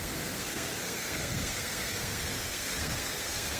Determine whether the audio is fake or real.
fake